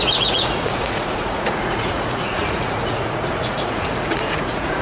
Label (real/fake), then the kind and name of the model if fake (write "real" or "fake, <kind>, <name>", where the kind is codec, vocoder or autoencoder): fake, vocoder, Vocos